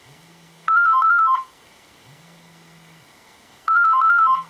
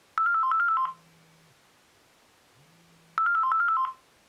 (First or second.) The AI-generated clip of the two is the first